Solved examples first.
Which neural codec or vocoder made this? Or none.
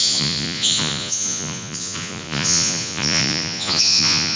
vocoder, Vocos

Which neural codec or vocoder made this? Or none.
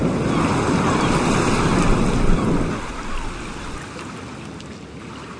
none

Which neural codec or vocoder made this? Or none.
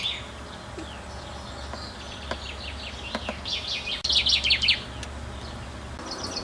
none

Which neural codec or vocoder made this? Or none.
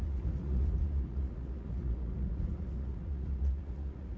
vocoder, Vocos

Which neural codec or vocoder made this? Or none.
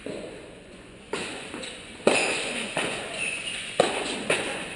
vocoder, Vocos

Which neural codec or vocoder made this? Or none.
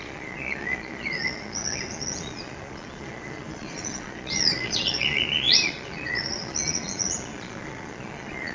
vocoder, Vocos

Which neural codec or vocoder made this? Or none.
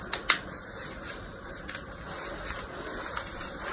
none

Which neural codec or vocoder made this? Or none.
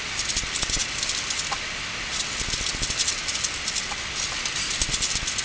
none